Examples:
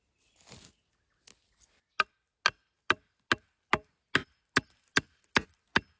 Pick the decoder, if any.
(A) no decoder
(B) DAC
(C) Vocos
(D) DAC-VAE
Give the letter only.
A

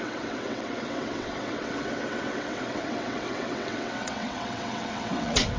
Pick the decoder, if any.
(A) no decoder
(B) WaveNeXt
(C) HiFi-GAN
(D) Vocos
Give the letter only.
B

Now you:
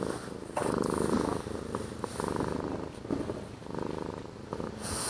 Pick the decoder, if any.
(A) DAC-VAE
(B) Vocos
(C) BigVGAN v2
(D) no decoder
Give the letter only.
D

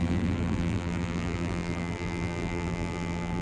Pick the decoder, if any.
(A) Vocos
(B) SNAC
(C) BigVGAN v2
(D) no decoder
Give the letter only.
C